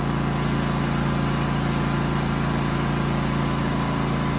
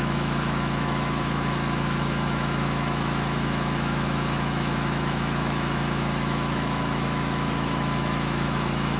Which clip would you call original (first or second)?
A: first